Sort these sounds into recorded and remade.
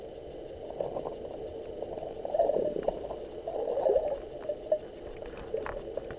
recorded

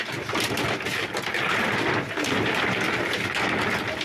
recorded